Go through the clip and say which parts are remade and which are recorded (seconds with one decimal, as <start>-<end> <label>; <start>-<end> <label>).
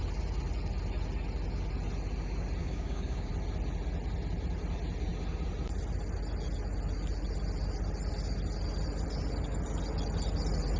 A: 0.0-2.6 recorded; 2.6-3.3 remade; 3.3-10.8 recorded